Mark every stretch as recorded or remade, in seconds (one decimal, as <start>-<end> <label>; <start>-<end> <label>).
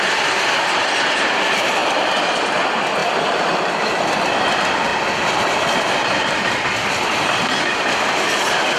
0.0-8.8 recorded